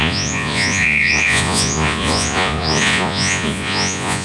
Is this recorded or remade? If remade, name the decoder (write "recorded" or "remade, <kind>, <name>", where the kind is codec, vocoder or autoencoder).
remade, vocoder, Vocos